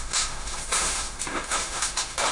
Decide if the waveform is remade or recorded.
remade